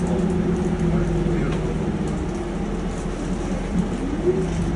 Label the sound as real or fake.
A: real